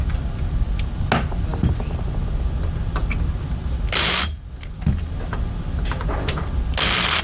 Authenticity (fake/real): real